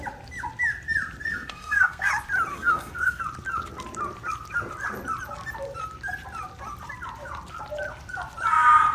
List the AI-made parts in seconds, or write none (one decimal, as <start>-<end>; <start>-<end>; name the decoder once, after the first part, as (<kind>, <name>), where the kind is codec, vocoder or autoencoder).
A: 1.3-2.1 (codec, SNAC); 2.5-3.2